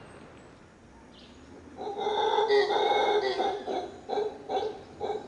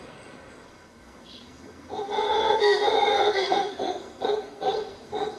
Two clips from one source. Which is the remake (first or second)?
second